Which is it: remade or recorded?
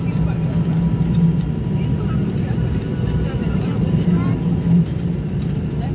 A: remade